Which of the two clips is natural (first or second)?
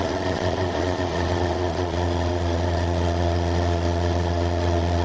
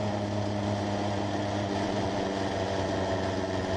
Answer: second